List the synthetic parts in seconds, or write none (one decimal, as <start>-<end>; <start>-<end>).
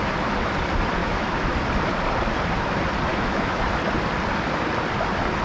1.0-1.5; 3.1-3.6